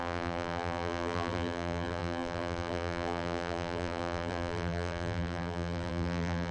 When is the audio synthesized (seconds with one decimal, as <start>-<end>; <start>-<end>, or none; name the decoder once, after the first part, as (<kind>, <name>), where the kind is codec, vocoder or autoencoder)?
0.0-6.5 (vocoder, BigVGAN v2)